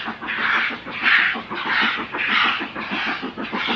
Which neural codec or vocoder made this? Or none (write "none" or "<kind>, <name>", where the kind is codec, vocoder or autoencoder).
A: none